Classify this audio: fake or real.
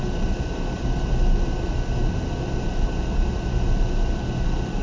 real